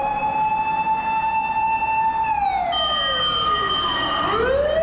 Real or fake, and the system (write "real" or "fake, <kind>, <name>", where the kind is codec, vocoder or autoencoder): real